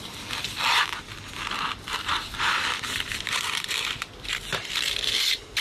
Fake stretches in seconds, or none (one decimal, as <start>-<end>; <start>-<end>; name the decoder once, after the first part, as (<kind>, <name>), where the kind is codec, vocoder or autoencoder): 2.1-5.6 (vocoder, BigVGAN v2)